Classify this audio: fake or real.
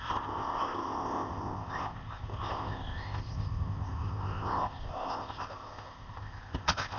fake